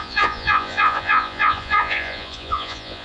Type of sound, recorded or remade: remade